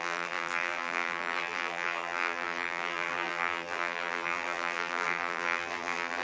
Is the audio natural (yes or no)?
no